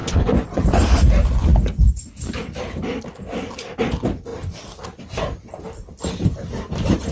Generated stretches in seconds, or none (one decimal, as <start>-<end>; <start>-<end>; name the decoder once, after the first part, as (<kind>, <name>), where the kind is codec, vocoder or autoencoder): 0.0-0.6 (vocoder, Vocos)